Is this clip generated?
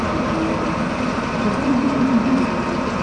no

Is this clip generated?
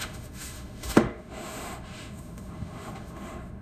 yes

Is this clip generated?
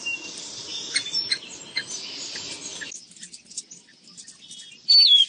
no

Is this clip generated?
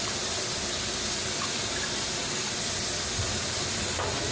no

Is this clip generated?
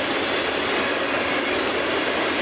no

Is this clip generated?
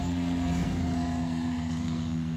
yes